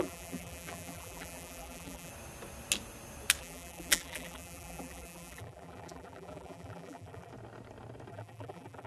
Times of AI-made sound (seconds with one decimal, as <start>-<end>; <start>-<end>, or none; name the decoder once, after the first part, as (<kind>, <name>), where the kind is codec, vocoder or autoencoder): 0.0-2.1 (vocoder, BigVGAN v2); 3.4-7.3; 8.1-8.9